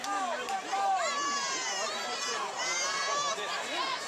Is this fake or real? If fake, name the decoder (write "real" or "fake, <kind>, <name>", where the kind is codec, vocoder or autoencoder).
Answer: fake, vocoder, BigVGAN v2